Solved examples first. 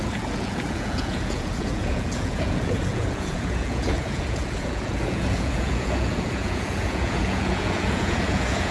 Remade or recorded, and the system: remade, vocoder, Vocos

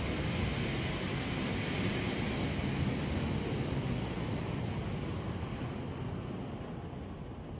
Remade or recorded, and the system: recorded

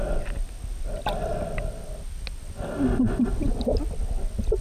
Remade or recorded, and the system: recorded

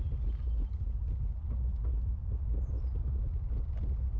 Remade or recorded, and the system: recorded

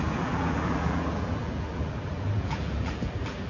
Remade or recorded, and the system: remade, vocoder, BigVGAN v2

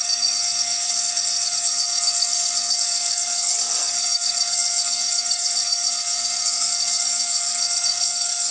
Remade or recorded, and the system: remade, codec, SNAC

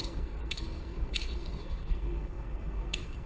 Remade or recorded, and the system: remade, codec, SNAC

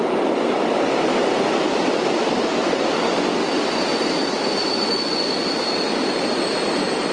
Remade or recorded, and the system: recorded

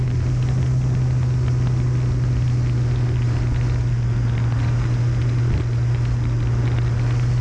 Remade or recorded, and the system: recorded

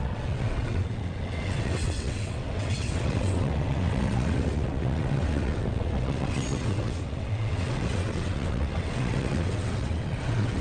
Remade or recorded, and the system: remade, vocoder, WaveNeXt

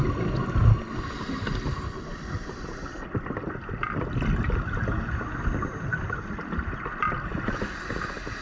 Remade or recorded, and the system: recorded